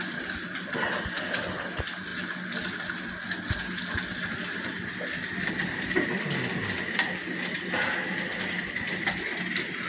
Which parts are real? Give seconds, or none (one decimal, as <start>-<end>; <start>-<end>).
0.0-9.9

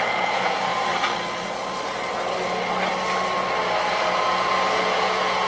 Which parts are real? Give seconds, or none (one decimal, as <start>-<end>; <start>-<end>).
0.7-3.9

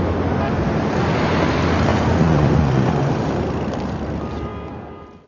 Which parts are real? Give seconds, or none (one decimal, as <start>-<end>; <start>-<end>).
0.0-1.9; 3.1-5.3